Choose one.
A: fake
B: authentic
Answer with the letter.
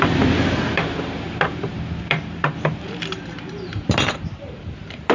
A